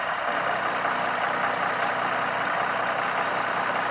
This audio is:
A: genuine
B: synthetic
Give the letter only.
A